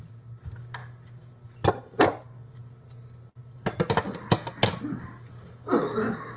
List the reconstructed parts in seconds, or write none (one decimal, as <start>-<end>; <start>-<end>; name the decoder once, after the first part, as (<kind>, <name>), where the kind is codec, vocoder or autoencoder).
none